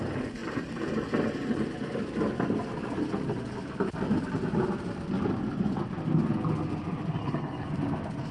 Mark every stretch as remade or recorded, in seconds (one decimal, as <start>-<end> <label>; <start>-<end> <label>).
0.0-7.1 recorded; 7.1-7.7 remade; 7.7-8.3 recorded